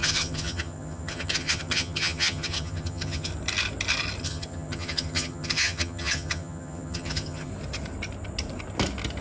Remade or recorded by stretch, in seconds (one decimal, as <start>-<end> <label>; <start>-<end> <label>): 0.0-3.3 remade; 3.3-4.2 recorded; 4.2-7.5 remade; 7.5-9.2 recorded